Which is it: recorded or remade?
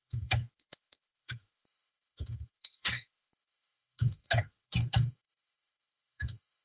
remade